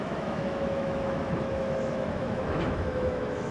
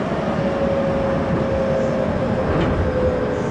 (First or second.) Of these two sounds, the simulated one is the first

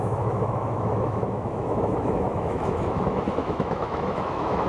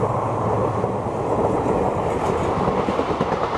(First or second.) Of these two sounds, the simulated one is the first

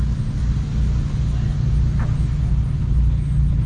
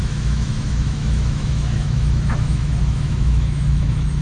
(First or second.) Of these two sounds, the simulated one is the second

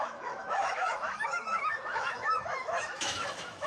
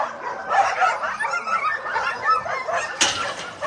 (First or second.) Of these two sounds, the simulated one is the first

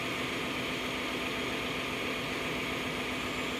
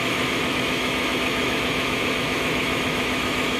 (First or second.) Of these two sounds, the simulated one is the second